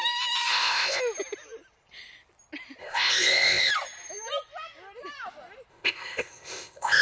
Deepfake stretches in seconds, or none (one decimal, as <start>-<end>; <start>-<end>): 0.5-1.0; 2.8-3.7; 5.7-7.0